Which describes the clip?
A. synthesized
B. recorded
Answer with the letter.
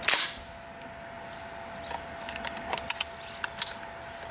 B